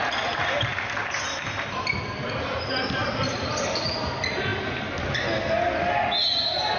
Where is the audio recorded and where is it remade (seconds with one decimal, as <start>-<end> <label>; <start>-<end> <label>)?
0.0-3.0 recorded; 3.0-3.7 remade; 3.7-6.8 recorded